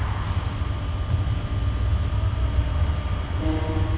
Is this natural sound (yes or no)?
yes